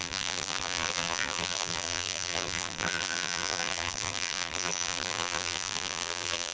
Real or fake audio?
fake